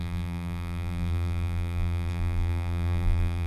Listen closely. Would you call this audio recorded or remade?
remade